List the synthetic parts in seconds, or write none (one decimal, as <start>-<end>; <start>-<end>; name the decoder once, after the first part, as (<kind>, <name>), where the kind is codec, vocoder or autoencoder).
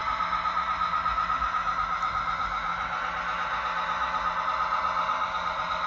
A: none